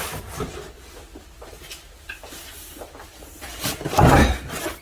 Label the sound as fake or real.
real